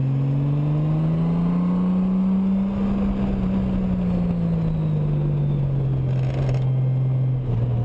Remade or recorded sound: recorded